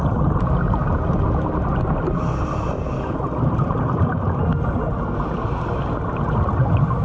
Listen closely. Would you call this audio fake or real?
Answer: real